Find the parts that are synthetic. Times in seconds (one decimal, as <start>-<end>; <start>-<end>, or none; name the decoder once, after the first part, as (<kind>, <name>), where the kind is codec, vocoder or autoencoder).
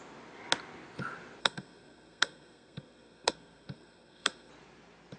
1.4-4.5 (codec, SNAC)